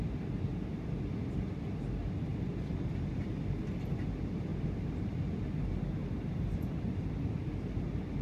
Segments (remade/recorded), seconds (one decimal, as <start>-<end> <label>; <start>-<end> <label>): 0.0-2.3 recorded; 2.3-3.6 remade; 3.6-4.5 recorded; 4.5-5.0 remade; 5.0-6.0 recorded; 6.0-7.3 remade; 7.3-8.2 recorded